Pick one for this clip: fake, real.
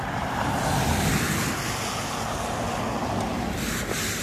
real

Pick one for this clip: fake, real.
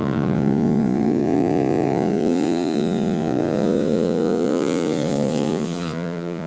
fake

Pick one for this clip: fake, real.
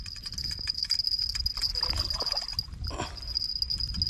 real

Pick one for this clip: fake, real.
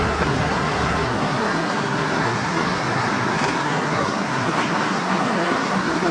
fake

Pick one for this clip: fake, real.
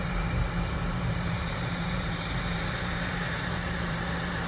fake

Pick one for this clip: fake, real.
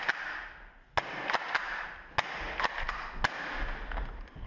real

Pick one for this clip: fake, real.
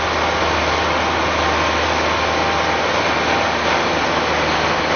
real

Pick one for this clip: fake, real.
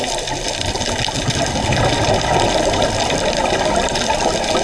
fake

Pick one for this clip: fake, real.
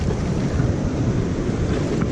real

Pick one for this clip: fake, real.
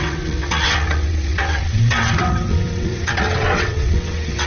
fake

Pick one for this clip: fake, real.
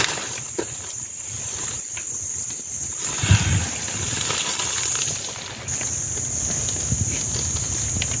real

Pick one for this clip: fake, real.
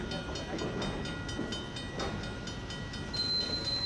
real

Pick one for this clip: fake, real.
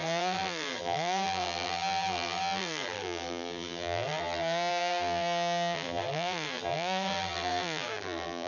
fake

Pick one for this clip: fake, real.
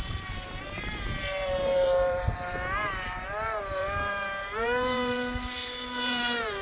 fake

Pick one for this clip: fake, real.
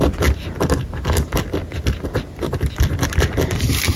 real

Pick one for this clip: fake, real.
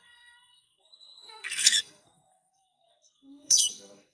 fake